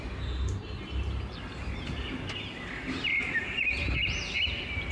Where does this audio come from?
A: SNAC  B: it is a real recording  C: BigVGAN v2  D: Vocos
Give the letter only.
B